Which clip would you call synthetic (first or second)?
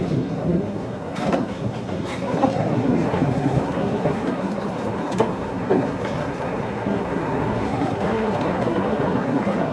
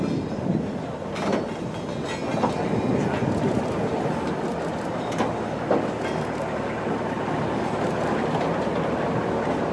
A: first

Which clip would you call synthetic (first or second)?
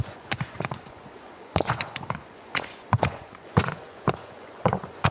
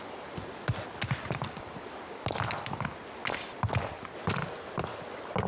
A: first